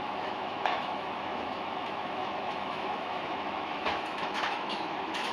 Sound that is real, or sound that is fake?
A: fake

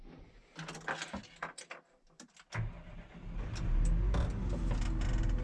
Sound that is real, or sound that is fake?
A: real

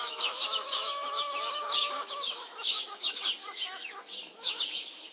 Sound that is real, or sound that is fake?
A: fake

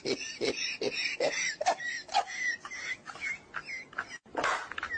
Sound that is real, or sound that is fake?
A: real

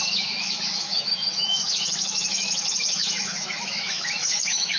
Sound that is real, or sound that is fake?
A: fake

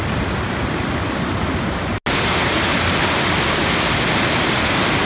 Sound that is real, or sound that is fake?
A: real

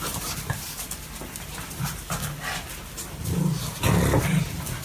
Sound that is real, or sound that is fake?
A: real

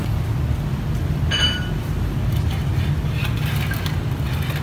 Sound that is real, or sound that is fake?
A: real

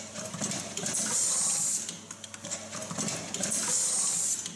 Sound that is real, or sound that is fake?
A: real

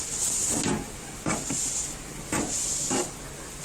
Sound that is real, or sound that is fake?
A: real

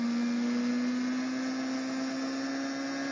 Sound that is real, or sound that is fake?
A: real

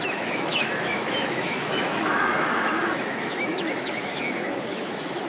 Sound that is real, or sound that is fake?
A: fake